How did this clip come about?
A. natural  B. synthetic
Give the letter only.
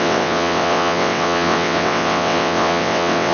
B